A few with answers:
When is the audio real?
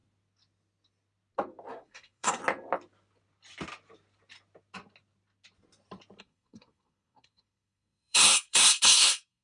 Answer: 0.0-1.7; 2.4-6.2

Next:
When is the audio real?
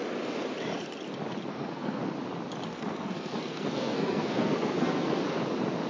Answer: 0.0-1.5; 2.0-2.7; 5.2-5.9